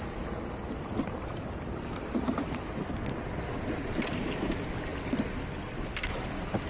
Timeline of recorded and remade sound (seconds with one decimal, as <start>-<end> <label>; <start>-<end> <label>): 0.0-6.7 recorded